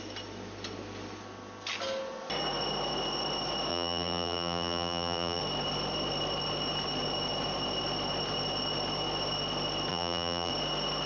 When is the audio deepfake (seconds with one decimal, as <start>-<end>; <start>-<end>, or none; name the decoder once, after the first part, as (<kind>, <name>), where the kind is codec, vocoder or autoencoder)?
3.7-5.4 (vocoder, BigVGAN v2); 9.9-10.5